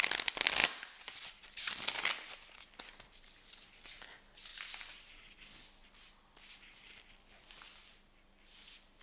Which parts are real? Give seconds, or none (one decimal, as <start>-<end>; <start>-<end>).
0.0-9.0